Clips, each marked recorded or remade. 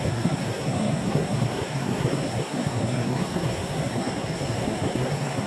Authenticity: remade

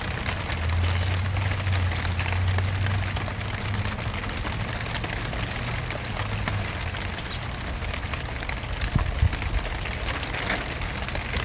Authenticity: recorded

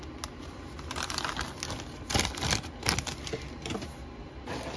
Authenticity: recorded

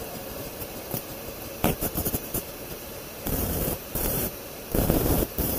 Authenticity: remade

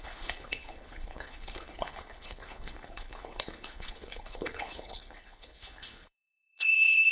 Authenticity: remade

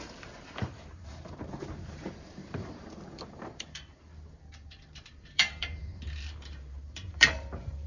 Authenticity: remade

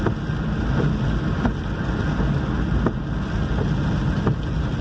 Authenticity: recorded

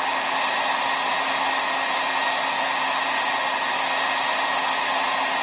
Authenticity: recorded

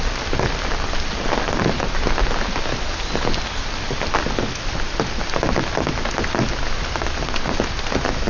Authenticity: recorded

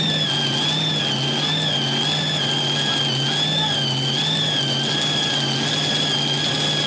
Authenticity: recorded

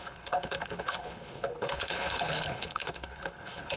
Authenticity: remade